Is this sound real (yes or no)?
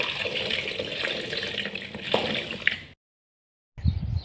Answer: yes